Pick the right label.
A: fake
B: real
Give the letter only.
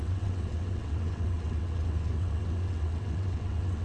A